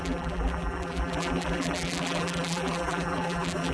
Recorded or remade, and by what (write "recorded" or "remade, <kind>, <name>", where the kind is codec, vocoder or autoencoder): remade, vocoder, BigVGAN v2